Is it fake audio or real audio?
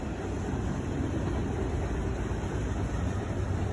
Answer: real